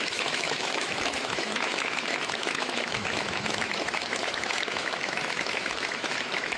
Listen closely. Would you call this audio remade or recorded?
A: remade